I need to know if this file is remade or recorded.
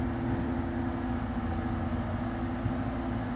recorded